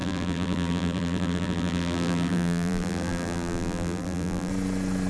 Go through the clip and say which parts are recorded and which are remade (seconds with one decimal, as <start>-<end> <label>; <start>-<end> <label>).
0.0-4.5 remade; 4.5-5.1 recorded